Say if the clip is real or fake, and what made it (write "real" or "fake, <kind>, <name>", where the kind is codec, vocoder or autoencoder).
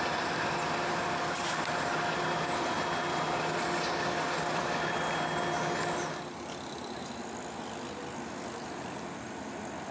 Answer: real